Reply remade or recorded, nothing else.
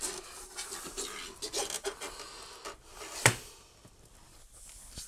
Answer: recorded